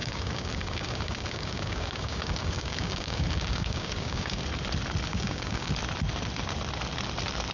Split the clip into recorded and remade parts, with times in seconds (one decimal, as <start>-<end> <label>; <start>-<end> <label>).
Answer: 0.0-4.4 remade; 4.4-5.1 recorded; 5.1-5.7 remade; 5.7-7.5 recorded